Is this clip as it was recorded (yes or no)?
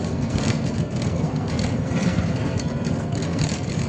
no